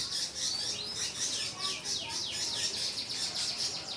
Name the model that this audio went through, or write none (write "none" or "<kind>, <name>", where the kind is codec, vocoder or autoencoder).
none